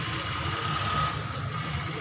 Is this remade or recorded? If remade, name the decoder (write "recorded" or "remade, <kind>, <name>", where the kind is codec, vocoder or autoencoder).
recorded